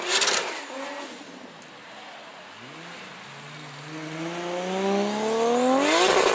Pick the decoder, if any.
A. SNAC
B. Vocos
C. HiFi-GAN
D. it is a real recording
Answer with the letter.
D